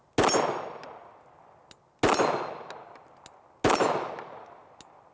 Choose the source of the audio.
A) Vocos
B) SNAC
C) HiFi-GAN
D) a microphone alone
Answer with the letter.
D